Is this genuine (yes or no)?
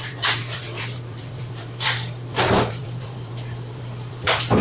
no